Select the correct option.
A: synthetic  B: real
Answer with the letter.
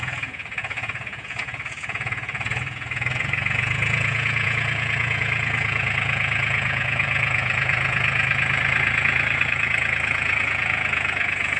A